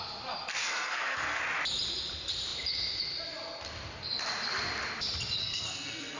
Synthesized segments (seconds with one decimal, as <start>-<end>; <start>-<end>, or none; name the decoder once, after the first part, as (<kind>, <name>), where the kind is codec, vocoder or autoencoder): 0.6-1.4 (codec, SNAC); 5.4-6.2